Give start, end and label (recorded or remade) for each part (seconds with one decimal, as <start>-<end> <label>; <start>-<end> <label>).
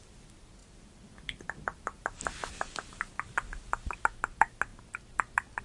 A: 0.0-0.6 recorded; 0.6-4.0 remade; 4.0-5.6 recorded